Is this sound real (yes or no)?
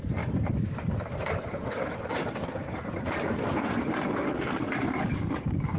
no